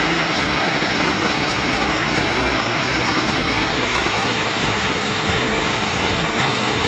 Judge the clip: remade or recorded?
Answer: remade